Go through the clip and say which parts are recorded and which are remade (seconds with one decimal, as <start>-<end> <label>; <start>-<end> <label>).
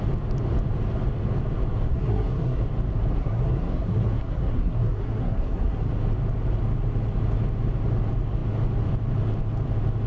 0.0-1.9 recorded; 1.9-2.6 remade; 2.6-3.2 recorded; 3.2-5.9 remade; 5.9-10.1 recorded